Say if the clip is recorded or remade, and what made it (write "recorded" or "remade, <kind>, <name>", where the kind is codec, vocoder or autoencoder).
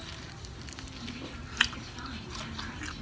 recorded